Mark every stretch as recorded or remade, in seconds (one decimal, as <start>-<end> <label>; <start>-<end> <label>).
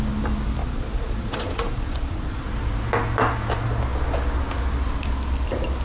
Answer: 0.0-0.6 recorded; 0.6-2.5 remade; 2.5-5.8 recorded